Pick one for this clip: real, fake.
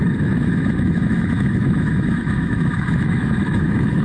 fake